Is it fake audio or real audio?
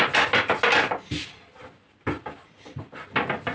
real